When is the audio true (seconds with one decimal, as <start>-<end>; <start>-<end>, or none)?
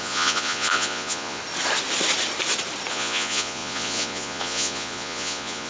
1.4-2.9